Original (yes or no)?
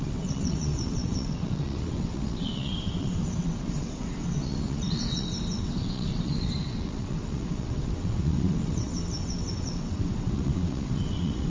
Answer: no